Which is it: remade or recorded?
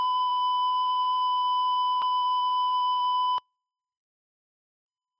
remade